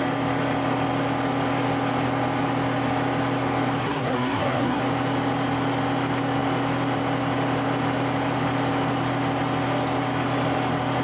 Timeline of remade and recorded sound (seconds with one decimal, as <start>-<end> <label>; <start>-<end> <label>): 0.0-3.8 recorded; 3.8-4.8 remade; 4.8-11.0 recorded